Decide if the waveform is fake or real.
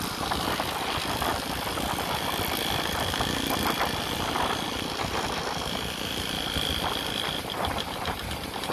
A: real